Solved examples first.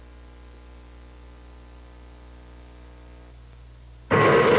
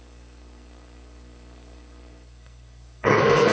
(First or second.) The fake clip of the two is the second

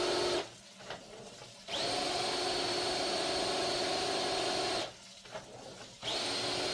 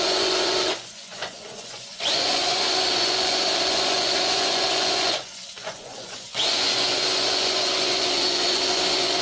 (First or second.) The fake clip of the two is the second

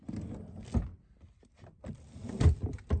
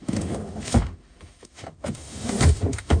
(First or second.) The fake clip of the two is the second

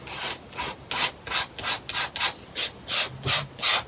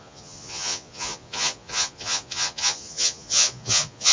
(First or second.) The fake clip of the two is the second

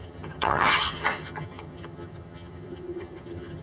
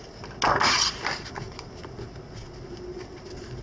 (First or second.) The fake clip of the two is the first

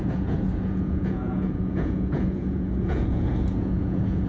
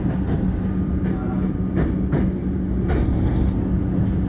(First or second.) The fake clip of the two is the first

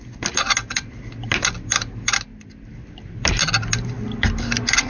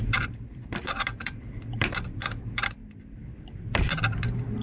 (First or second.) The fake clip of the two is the second